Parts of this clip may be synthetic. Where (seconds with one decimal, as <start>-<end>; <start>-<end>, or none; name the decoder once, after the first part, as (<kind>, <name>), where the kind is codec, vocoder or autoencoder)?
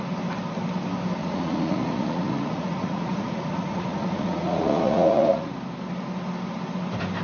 1.2-5.5 (vocoder, Vocos)